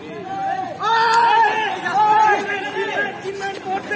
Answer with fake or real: real